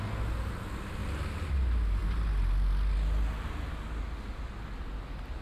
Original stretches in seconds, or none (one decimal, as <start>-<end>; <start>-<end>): 0.0-5.4